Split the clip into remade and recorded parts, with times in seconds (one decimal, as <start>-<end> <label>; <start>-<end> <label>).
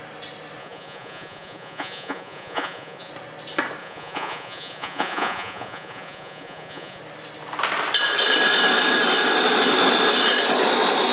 0.0-0.6 recorded; 0.6-3.1 remade; 3.1-3.8 recorded; 3.8-7.0 remade; 7.0-11.1 recorded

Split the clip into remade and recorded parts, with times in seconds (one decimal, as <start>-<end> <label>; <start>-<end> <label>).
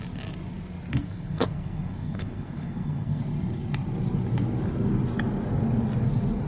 0.0-0.9 recorded; 0.9-3.2 remade; 3.2-6.5 recorded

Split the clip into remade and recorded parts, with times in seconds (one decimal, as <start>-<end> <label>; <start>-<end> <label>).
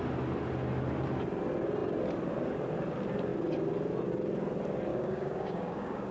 0.0-4.9 recorded; 4.9-6.1 remade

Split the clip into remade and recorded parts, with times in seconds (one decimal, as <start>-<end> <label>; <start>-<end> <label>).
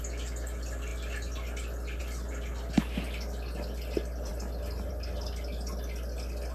0.0-6.5 recorded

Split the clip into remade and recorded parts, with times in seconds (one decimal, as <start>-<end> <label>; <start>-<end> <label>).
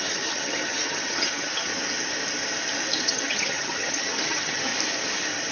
0.0-1.7 remade; 1.7-3.0 recorded; 3.0-4.7 remade; 4.7-5.5 recorded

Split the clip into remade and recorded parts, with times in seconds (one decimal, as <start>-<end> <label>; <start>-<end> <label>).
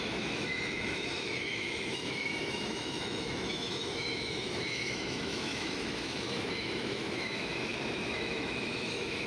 0.0-9.3 remade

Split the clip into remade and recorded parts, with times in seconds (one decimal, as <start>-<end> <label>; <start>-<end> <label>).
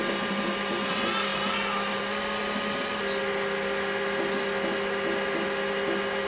0.0-6.3 recorded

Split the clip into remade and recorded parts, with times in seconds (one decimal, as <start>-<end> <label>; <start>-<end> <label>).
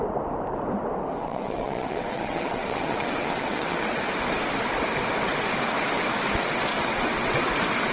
0.0-1.2 recorded; 1.2-4.0 remade; 4.0-6.7 recorded; 6.7-7.5 remade; 7.5-7.9 recorded